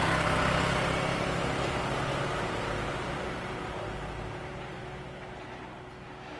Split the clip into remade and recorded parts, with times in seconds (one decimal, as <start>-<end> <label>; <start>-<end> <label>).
0.0-6.4 recorded